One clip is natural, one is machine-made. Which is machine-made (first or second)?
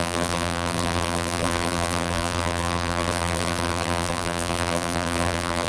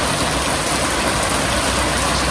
first